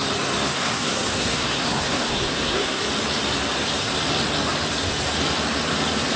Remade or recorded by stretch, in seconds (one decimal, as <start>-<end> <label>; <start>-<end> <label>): 0.0-0.5 recorded; 0.5-2.8 remade; 2.8-6.2 recorded